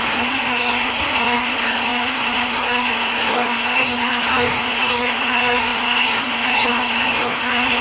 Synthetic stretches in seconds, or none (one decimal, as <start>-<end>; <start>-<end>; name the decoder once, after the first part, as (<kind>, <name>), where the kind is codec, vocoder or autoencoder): 0.0-7.8 (codec, SNAC)

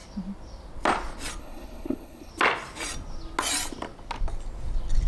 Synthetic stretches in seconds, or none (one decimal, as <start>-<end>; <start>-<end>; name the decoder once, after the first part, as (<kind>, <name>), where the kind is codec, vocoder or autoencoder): 1.4-2.3 (codec, HILCodec)

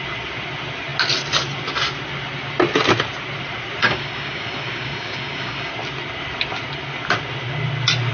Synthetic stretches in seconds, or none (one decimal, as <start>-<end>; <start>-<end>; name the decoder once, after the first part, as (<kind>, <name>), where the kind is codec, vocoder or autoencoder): 3.8-5.7 (codec, DAC)

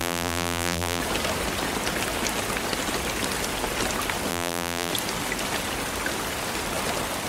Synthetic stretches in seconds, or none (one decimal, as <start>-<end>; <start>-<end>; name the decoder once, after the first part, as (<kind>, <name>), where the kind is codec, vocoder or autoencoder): 0.0-1.0 (vocoder, BigVGAN v2); 4.3-4.9

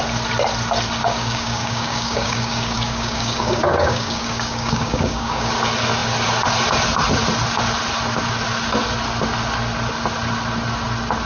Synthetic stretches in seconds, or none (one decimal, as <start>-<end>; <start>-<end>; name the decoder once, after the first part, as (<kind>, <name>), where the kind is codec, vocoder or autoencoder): 1.0-5.5 (codec, DAC)